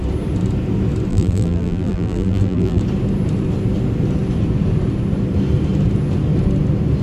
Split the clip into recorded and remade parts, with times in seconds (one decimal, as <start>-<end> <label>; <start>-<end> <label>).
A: 0.0-1.1 recorded; 1.1-2.8 remade; 2.8-7.0 recorded